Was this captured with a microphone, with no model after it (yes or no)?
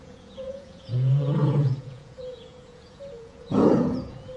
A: no